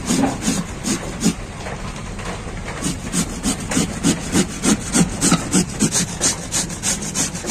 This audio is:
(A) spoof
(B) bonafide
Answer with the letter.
B